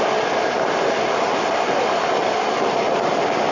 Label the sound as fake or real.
real